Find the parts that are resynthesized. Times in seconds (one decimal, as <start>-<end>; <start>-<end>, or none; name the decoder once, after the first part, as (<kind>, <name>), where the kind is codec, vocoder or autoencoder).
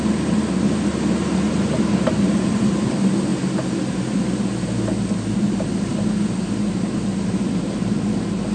7.1-7.8 (vocoder, BigVGAN v2)